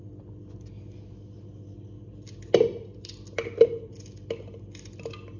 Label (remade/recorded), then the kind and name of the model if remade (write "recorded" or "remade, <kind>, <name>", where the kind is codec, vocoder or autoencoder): recorded